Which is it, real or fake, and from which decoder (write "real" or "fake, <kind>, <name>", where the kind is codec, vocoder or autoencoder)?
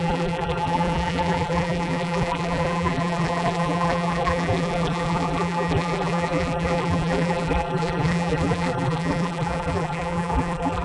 fake, vocoder, BigVGAN v2